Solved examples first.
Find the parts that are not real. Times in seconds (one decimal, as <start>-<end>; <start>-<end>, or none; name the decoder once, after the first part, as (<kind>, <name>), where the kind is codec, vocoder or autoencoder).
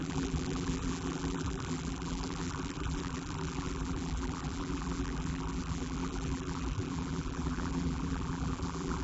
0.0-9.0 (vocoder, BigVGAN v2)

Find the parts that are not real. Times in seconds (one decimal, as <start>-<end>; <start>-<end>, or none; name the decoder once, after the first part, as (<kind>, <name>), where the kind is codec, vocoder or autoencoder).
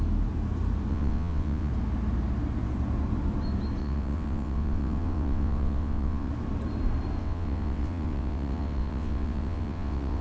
0.9-1.7 (vocoder, WaveNeXt); 3.8-6.3; 7.2-10.2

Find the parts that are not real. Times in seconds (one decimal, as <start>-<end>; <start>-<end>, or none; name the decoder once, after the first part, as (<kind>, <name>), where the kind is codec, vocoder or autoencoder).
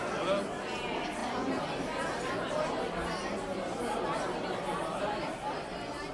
none